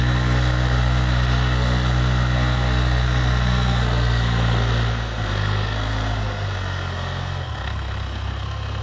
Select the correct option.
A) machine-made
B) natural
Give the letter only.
A